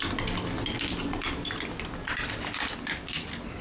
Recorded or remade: recorded